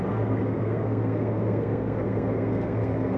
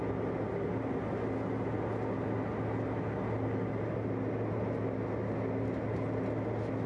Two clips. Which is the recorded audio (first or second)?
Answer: second